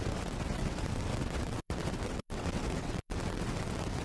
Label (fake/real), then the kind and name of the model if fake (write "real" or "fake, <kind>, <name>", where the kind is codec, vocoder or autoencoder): fake, vocoder, WaveNeXt